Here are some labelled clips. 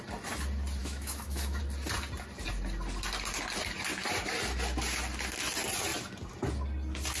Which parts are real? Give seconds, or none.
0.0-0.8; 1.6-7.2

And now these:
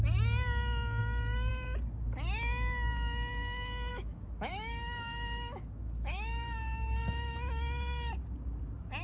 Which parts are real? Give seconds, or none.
0.0-1.0; 1.5-3.9; 8.1-9.0